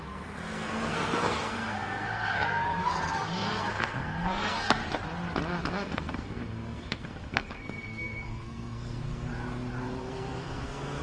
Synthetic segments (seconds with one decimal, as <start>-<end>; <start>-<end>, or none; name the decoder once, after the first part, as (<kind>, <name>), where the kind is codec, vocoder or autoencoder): 0.0-4.8 (codec, SNAC); 5.7-9.3; 10.0-11.0